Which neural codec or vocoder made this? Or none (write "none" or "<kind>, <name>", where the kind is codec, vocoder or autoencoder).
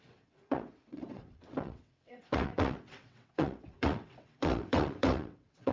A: vocoder, WaveNeXt